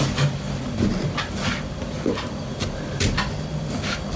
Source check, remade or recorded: recorded